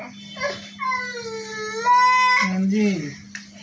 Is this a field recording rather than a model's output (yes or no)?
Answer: yes